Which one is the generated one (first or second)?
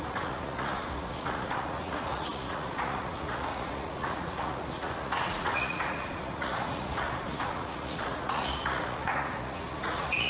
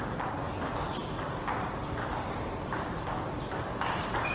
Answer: first